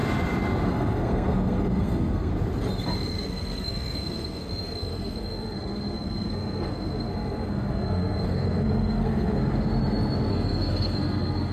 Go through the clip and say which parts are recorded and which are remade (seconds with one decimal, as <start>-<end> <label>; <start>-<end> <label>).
0.0-0.7 recorded; 0.7-2.3 remade; 2.3-3.1 recorded; 3.1-9.4 remade; 9.4-10.3 recorded; 10.3-11.5 remade